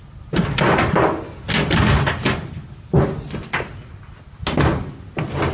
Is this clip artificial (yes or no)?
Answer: no